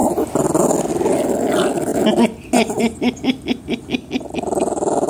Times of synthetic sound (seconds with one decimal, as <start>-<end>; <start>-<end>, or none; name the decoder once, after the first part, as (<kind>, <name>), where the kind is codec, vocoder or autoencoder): none

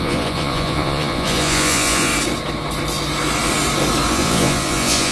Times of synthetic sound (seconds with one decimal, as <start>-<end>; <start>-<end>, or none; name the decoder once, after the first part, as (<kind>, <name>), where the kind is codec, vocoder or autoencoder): 0.0-2.1 (vocoder, Vocos); 4.1-5.1

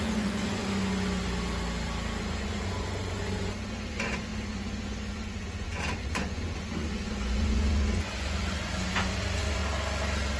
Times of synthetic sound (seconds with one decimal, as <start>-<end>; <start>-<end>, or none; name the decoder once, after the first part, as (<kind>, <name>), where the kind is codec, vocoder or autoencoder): 0.0-0.6 (vocoder, Vocos); 2.2-9.6

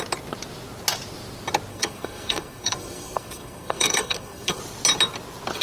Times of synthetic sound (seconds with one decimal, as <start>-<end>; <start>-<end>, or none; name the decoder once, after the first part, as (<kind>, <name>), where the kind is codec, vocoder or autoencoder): 1.7-4.6 (codec, SNAC)

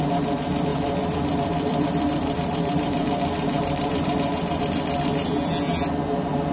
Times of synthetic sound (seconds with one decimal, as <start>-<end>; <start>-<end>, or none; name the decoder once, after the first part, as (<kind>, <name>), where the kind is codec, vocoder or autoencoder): 0.7-4.6 (vocoder, BigVGAN v2)

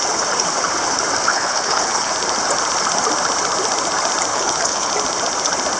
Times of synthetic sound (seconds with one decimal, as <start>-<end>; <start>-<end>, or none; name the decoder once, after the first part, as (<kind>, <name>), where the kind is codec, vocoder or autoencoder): 1.3-2.1 (codec, HILCodec); 4.3-4.9

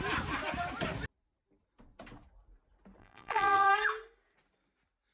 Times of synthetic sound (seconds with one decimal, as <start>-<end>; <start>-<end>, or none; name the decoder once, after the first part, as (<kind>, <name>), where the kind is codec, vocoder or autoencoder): 3.0-3.7 (vocoder, BigVGAN v2)